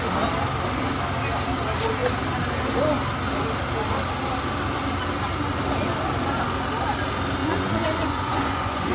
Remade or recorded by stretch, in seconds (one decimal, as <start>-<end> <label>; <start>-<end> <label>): 0.0-7.4 recorded; 7.4-8.9 remade